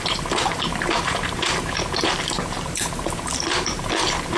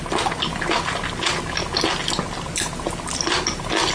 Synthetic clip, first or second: first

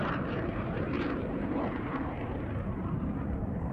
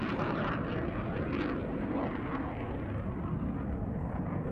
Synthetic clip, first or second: first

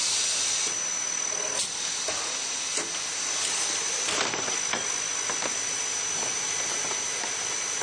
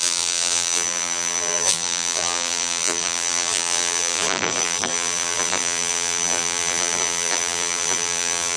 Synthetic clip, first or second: second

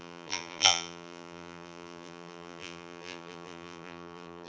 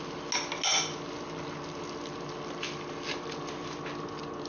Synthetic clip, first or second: first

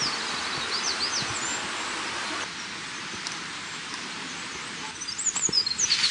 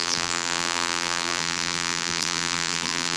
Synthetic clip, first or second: second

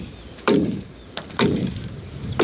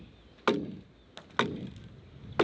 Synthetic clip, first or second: first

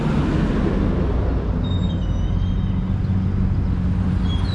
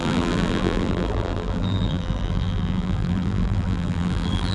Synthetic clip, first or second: second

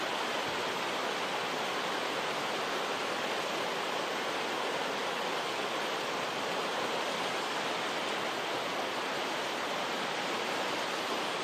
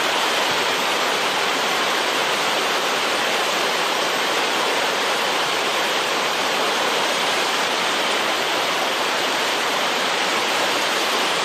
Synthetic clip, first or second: second